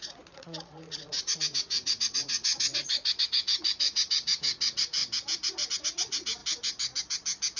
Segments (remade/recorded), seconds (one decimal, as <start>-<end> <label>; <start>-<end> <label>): 0.0-5.0 remade; 5.0-5.7 recorded; 5.7-6.4 remade; 6.4-7.6 recorded